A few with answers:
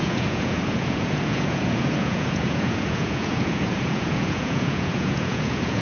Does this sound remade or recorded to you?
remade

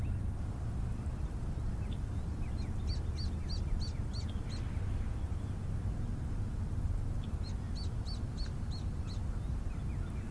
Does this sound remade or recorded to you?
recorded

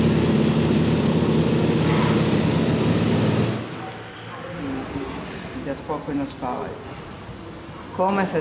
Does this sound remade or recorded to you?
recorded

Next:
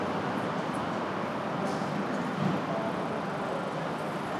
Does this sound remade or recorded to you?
recorded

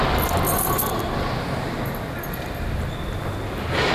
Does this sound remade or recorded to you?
recorded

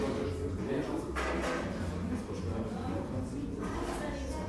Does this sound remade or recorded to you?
recorded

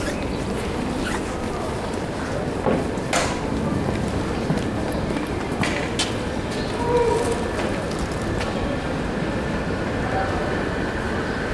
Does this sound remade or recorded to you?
recorded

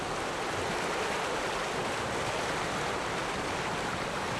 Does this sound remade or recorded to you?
recorded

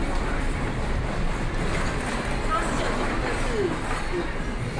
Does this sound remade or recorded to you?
recorded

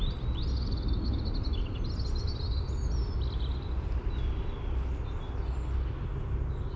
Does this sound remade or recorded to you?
recorded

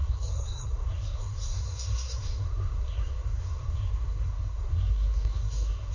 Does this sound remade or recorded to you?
remade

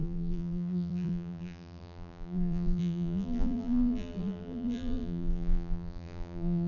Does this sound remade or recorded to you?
remade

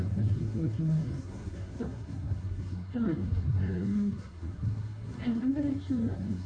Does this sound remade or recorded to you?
remade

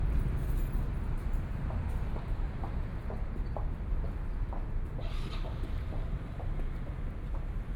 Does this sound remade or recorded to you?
recorded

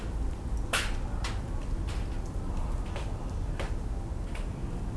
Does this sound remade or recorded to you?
recorded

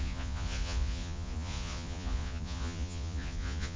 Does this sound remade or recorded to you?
remade